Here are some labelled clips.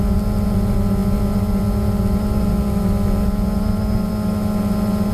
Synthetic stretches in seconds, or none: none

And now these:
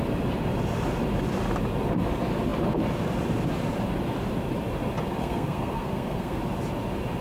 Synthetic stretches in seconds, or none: 5.2-6.4 (codec, SNAC)